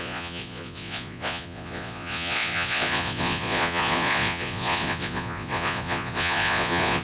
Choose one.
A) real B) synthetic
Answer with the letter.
B